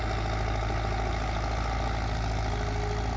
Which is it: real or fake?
real